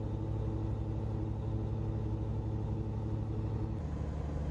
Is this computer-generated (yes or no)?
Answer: no